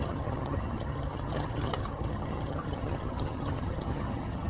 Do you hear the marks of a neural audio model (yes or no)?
yes